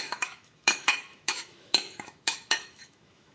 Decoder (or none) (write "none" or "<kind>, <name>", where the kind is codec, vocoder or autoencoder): autoencoder, DAC-VAE